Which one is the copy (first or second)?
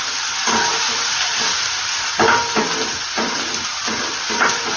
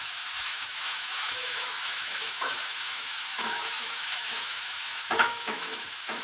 second